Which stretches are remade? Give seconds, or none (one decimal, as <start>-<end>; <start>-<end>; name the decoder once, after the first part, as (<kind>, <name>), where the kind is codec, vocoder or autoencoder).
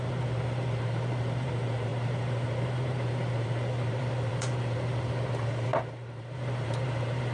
0.0-7.3 (vocoder, BigVGAN v2)